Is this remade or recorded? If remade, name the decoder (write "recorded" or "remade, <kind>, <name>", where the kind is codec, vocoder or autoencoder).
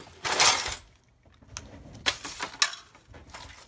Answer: recorded